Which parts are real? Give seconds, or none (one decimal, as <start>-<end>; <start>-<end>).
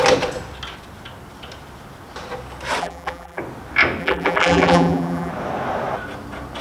0.0-2.8; 3.4-4.0; 5.3-6.6